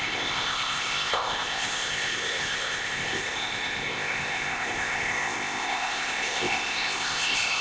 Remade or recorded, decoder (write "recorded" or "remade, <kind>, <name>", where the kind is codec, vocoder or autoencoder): remade, codec, ZipCodec